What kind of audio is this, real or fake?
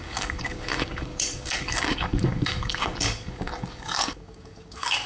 fake